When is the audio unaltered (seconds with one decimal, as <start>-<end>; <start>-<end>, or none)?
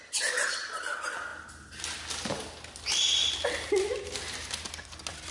0.0-5.3